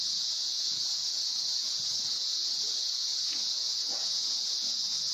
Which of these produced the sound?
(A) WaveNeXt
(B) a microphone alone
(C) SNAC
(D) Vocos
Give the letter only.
D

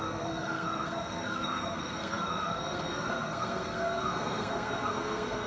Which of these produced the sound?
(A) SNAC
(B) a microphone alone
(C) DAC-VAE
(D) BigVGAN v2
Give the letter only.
A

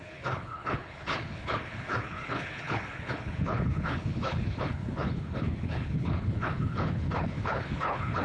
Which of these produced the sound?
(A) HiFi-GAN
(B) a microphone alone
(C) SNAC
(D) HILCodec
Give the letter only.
D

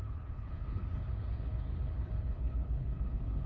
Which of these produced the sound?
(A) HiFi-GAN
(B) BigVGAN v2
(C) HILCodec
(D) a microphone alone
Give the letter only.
C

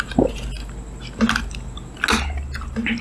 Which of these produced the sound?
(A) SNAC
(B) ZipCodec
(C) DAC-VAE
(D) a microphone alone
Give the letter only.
D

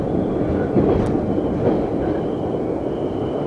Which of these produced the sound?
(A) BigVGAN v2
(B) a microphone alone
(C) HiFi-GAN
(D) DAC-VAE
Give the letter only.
B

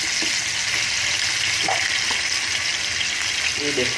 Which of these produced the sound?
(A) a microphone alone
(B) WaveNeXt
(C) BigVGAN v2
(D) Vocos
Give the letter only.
A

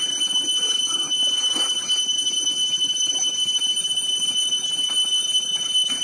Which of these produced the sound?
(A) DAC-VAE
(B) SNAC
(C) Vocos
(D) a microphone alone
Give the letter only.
A